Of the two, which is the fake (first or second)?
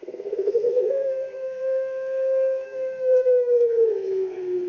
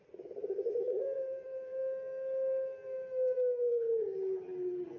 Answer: first